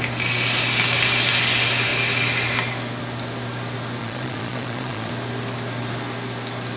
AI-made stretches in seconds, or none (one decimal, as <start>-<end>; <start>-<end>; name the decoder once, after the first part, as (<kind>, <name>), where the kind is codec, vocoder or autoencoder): 4.0-5.1 (vocoder, Vocos)